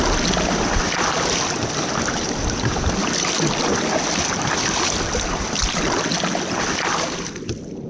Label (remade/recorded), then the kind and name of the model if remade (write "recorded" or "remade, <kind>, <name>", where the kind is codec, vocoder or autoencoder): recorded